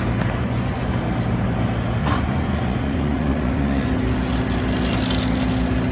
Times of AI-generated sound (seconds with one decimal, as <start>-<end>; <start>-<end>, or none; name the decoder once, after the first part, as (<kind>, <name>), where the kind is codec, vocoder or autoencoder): 0.4-1.0 (vocoder, Vocos); 2.0-3.9